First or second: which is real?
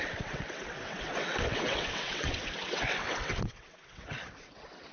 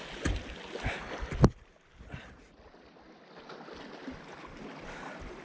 second